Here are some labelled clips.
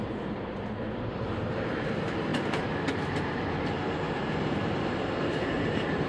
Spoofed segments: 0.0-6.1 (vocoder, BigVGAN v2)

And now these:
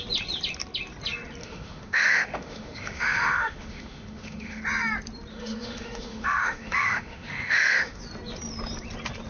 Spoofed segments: 1.4-4.6 (autoencoder, DAC-VAE); 5.3-8.0

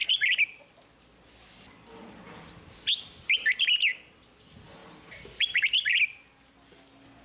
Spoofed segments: none

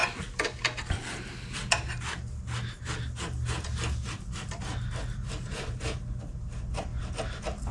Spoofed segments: none

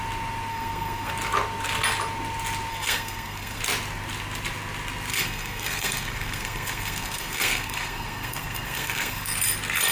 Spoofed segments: 0.5-1.1 (codec, SNAC); 2.7-3.6; 5.1-9.4